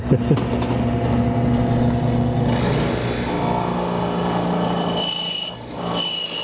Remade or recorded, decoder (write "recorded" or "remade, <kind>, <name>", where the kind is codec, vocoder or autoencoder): recorded